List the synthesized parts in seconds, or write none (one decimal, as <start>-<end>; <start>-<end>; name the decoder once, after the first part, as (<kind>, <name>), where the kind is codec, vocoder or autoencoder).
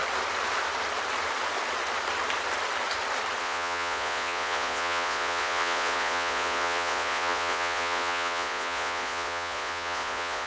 3.4-10.5 (vocoder, Vocos)